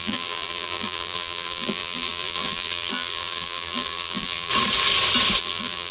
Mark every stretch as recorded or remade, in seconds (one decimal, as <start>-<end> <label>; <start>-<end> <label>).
0.0-4.5 remade; 4.5-5.4 recorded; 5.4-5.9 remade